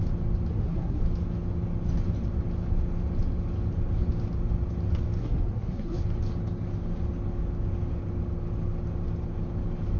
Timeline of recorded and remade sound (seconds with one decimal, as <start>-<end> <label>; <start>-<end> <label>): 0.0-0.5 recorded; 0.5-1.0 remade; 1.0-5.2 recorded; 5.2-6.0 remade; 6.0-10.0 recorded